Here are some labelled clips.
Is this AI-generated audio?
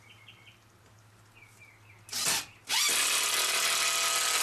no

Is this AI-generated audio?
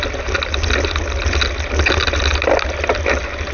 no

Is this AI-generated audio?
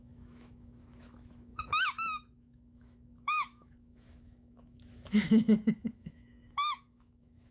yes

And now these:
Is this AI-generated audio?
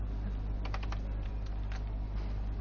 yes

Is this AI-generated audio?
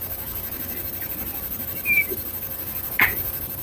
no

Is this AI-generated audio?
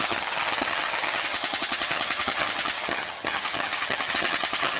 yes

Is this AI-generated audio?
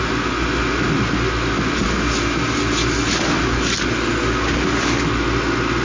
no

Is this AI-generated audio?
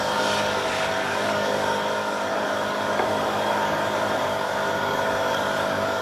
yes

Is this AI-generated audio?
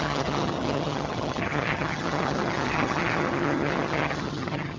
yes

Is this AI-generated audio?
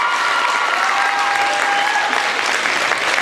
no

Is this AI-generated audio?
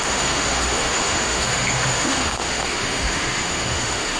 yes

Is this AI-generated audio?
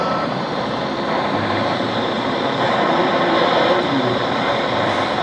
yes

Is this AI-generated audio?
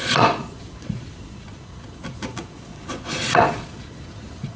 yes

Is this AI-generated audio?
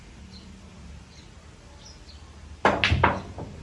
no